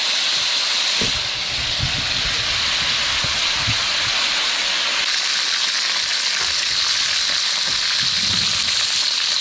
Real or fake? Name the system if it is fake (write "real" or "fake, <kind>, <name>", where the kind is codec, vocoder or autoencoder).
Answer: real